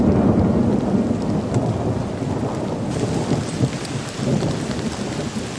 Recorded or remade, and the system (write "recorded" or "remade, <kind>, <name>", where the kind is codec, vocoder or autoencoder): recorded